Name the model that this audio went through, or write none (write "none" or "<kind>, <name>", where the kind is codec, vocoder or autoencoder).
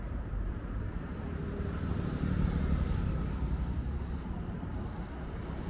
none